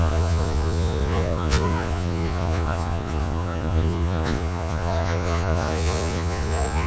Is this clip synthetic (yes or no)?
yes